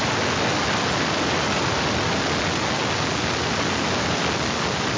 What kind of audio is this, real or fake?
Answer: real